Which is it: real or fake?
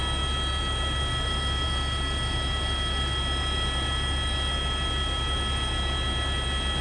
real